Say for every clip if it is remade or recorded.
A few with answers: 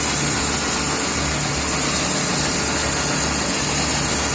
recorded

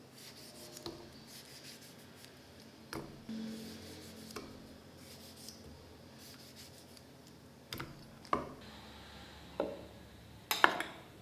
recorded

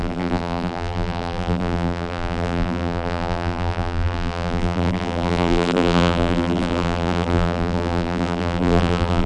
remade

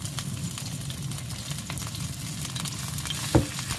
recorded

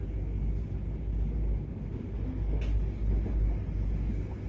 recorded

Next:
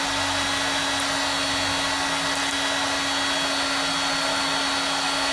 recorded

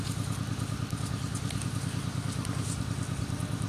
recorded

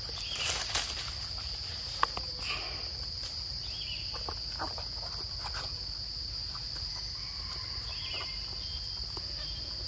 recorded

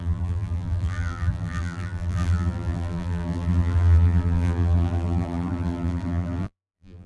remade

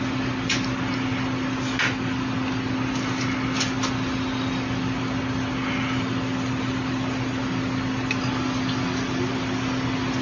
recorded